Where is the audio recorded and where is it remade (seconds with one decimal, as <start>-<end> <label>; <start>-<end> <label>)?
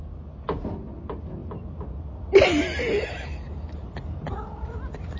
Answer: 0.0-5.2 recorded